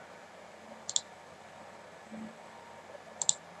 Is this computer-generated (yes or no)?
no